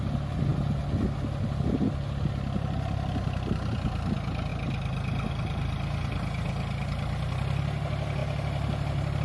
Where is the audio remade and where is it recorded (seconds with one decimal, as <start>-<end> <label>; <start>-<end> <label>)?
0.0-9.2 recorded